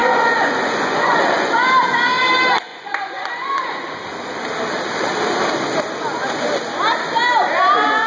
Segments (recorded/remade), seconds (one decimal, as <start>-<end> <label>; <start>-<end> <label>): 0.0-1.5 remade; 1.5-2.7 recorded; 2.7-4.0 remade; 4.0-8.1 recorded